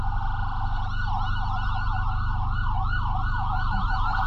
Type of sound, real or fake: real